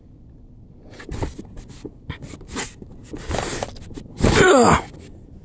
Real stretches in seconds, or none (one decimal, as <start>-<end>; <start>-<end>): 0.0-5.4